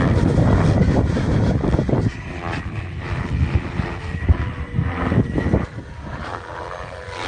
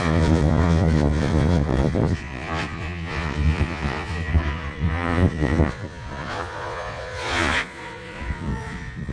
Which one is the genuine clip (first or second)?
first